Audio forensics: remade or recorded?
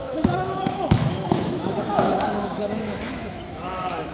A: remade